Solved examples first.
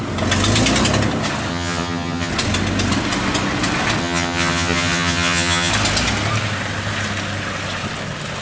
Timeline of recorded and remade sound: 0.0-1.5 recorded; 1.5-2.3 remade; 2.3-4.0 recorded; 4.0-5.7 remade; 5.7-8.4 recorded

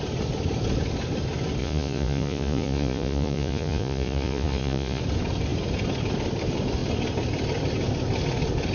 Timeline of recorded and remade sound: 0.0-1.6 recorded; 1.6-5.0 remade; 5.0-8.7 recorded